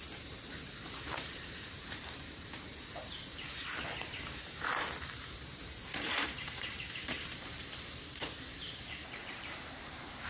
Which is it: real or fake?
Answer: fake